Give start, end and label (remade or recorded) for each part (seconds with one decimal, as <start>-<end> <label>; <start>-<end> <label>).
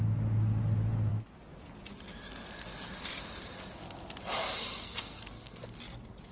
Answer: 0.0-4.8 recorded; 4.8-5.6 remade; 5.6-6.3 recorded